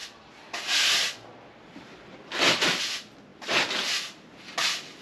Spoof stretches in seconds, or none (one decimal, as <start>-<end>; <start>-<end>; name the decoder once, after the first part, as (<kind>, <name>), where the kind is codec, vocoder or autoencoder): none